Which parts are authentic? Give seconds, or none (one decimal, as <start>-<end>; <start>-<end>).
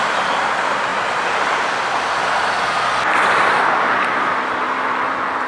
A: 0.0-5.5